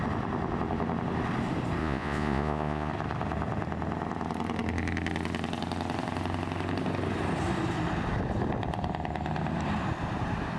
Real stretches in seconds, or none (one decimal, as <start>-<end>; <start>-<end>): 0.0-1.8; 2.9-10.6